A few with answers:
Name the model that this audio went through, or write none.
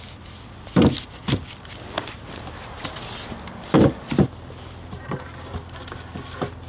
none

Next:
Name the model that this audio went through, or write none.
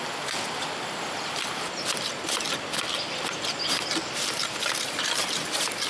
none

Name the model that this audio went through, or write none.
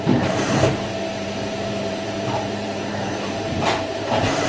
vocoder, BigVGAN v2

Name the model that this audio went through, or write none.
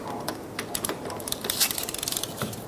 none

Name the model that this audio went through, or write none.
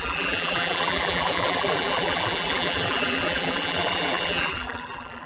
vocoder, BigVGAN v2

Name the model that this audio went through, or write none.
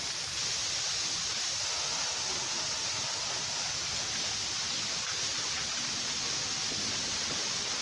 none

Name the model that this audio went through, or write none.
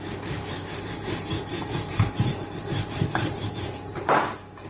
vocoder, BigVGAN v2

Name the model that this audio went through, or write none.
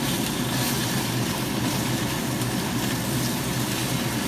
none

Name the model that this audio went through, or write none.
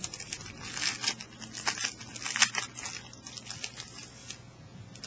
none